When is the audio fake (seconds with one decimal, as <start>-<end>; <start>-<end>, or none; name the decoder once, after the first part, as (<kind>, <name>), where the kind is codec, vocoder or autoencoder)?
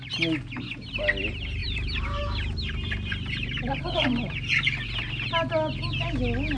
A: 1.6-5.3 (vocoder, BigVGAN v2)